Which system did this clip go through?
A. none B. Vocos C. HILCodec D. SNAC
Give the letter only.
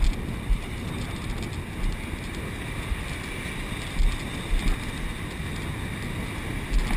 A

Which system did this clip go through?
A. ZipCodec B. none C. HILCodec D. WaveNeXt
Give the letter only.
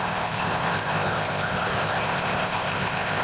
A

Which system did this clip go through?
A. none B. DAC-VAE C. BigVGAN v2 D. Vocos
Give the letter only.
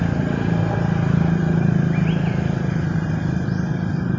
A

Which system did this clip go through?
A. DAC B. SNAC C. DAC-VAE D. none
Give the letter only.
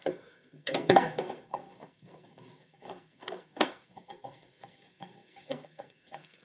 B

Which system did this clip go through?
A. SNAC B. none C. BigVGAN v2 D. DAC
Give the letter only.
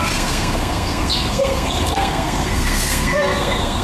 A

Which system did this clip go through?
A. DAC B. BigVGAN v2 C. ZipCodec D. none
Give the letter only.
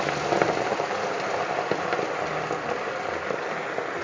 D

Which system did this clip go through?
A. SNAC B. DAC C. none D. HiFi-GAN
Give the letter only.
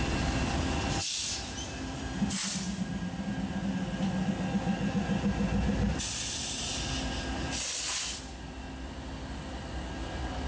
C